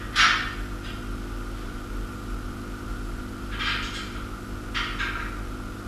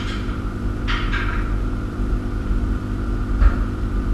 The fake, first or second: second